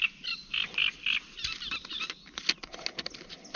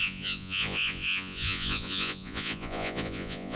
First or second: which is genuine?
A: first